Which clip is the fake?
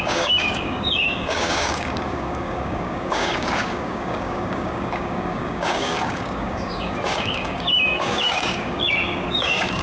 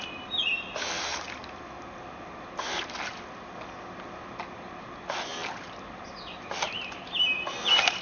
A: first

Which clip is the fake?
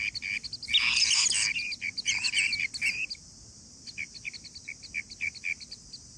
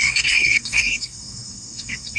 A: second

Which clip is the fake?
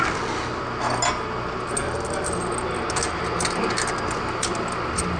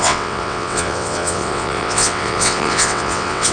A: second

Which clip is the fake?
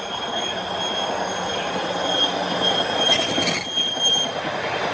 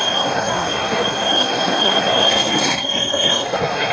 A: second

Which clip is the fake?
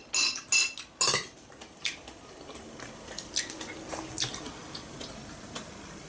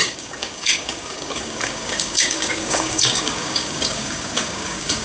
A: second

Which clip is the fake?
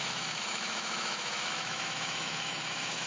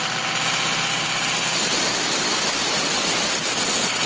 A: first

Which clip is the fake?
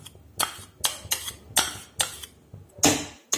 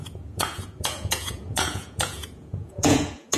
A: second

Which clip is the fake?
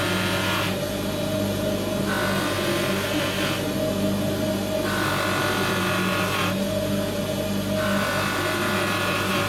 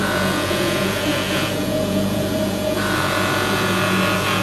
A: second